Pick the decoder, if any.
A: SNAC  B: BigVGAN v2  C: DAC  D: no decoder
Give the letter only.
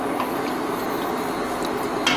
D